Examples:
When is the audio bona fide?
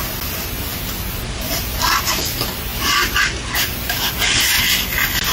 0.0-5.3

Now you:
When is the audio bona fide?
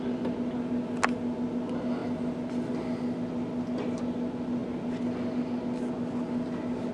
0.0-6.9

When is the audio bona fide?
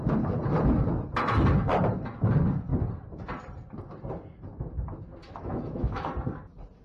0.0-5.2; 6.1-6.8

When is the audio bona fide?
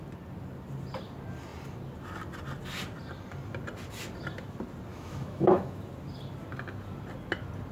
0.0-4.9; 5.8-7.7